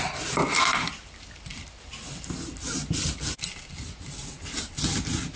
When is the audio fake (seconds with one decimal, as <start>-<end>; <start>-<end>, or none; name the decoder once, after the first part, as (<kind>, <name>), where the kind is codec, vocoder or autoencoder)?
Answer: none